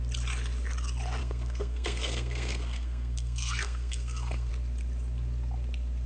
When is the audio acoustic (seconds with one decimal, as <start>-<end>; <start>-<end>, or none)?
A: 0.0-1.2; 4.5-6.1